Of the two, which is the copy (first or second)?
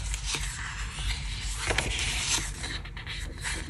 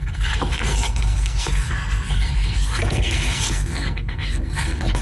second